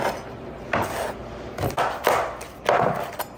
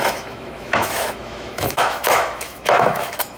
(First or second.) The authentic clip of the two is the first